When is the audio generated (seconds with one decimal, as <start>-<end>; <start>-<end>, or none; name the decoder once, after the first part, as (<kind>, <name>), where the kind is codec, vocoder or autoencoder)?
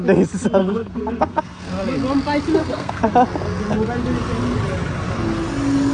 0.6-1.7 (codec, SNAC); 2.6-3.1